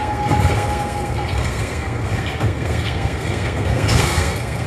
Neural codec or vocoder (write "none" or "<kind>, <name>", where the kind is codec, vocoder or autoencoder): codec, SNAC